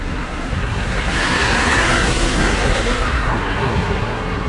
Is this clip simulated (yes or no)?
yes